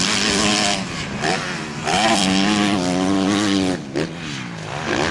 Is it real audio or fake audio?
real